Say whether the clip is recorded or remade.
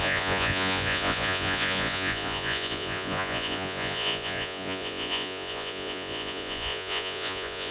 remade